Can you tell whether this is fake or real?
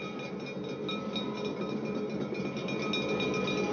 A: real